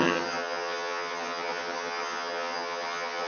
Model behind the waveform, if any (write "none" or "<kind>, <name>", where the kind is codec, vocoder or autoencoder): vocoder, HiFi-GAN